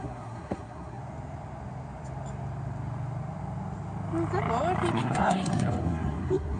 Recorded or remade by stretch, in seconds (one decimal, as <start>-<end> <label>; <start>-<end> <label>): 0.0-1.0 remade; 1.0-4.9 recorded; 4.9-6.6 remade